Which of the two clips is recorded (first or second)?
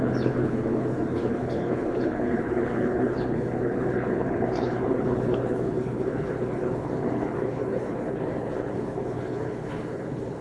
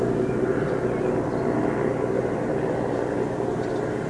second